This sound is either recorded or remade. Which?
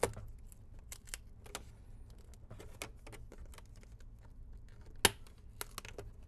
recorded